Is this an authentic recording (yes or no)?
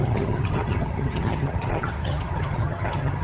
no